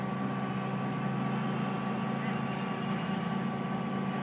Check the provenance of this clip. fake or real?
real